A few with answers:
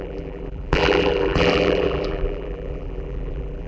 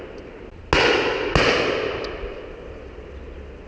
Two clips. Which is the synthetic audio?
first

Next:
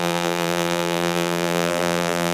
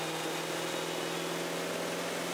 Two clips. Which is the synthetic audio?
first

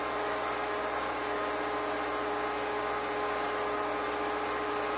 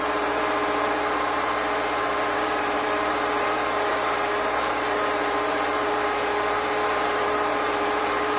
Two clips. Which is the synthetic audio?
second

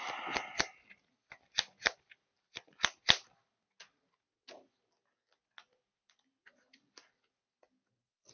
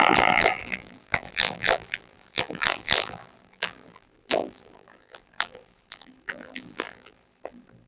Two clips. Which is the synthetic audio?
second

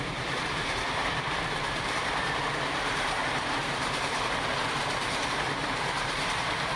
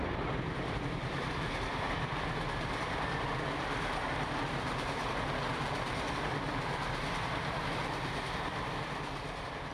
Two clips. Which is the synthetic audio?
first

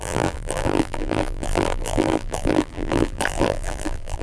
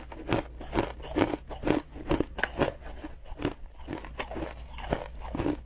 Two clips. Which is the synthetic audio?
first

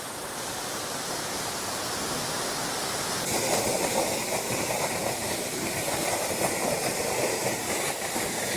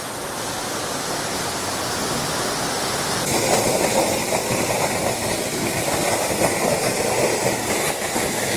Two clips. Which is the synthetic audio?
first